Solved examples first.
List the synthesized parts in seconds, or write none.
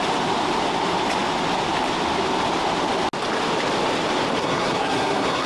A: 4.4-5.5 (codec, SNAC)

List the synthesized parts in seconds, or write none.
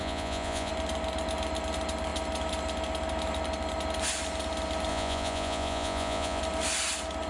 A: 0.0-0.7 (vocoder, Vocos); 4.9-6.4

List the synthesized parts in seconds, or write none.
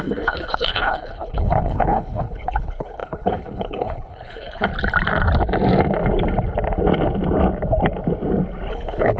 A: 0.0-4.7 (codec, HILCodec); 8.7-9.2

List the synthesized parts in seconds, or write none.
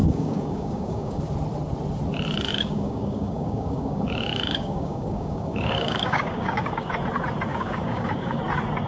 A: 0.0-1.2 (codec, DAC); 2.5-6.9; 7.5-8.4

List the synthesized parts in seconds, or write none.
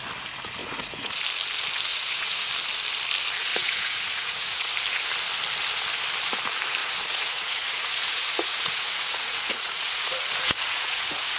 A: 0.6-1.2 (vocoder, Vocos); 1.9-2.5; 3.5-4.7; 6.8-11.4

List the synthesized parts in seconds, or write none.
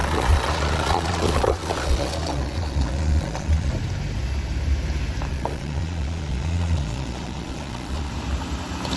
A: 0.0-3.7 (vocoder, Vocos); 5.3-8.1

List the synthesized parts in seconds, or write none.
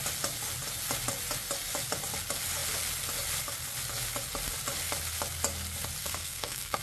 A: 6.0-6.8 (codec, SNAC)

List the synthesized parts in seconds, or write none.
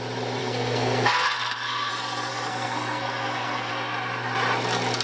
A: 0.4-1.9 (codec, SNAC); 2.3-3.7